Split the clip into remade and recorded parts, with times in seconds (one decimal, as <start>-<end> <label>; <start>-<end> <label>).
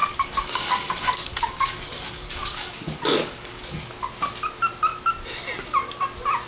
0.0-3.9 remade; 3.9-6.5 recorded